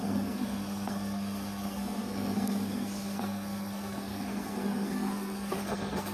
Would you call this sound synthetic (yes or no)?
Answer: yes